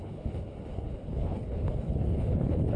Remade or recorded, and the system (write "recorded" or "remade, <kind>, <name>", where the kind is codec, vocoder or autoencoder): remade, codec, HILCodec